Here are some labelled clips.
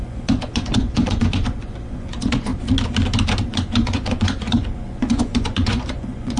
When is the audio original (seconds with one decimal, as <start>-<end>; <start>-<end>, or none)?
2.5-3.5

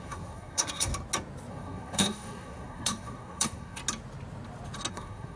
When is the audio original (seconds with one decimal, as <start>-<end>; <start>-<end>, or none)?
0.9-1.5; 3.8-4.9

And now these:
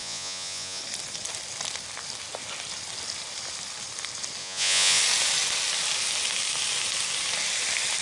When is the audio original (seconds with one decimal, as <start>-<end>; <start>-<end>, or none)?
0.8-4.4; 5.0-8.0

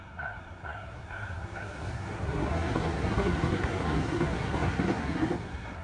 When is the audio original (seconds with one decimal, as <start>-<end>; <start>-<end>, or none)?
none

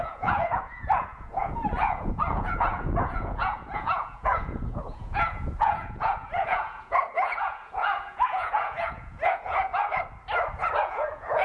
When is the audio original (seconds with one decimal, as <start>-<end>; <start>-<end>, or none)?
9.7-10.8